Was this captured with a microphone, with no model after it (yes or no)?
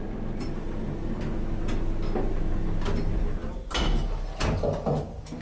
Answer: yes